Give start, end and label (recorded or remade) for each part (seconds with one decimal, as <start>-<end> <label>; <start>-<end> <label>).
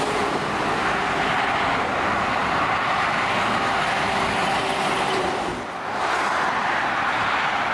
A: 0.0-2.4 recorded; 2.4-3.3 remade; 3.3-7.7 recorded